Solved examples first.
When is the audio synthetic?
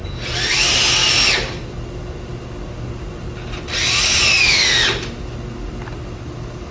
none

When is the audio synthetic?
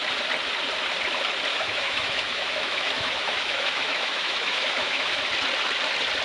1.5-5.2 (autoencoder, DAC-VAE)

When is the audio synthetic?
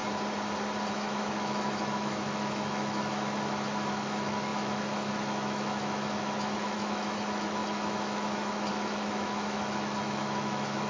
0.9-3.1 (autoencoder, DAC-VAE); 3.9-10.9